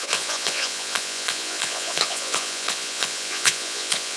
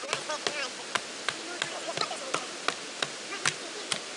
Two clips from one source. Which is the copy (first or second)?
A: first